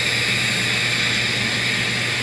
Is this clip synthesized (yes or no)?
no